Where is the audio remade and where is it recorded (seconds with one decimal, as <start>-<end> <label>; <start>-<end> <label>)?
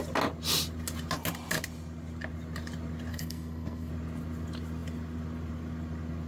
0.0-3.1 recorded; 3.1-3.9 remade; 3.9-6.3 recorded